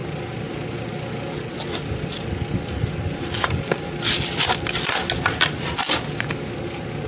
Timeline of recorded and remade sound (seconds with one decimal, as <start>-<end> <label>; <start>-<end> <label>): 0.0-7.1 recorded